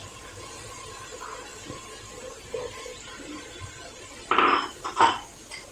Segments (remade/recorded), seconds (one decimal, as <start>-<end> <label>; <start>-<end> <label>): 0.0-1.5 recorded; 1.5-4.9 remade; 4.9-5.7 recorded